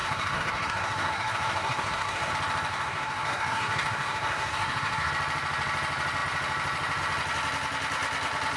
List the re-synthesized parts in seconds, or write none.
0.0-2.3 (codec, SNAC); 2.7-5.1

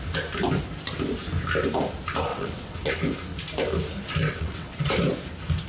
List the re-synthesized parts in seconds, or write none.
2.3-2.9 (vocoder, WaveNeXt); 4.3-4.9

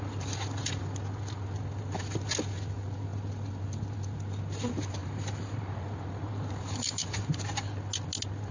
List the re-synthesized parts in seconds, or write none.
5.0-7.7 (vocoder, BigVGAN v2)

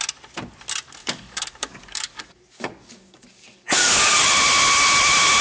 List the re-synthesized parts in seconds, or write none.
1.0-4.2 (codec, DAC)

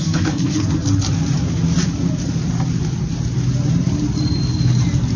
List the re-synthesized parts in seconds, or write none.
0.0-0.7 (codec, SNAC)

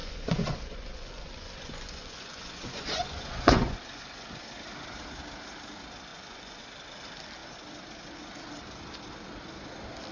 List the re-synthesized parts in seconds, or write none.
0.0-4.3 (vocoder, Vocos); 6.1-6.6

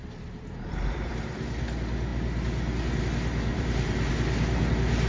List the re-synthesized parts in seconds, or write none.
0.0-1.1 (vocoder, BigVGAN v2); 3.5-4.1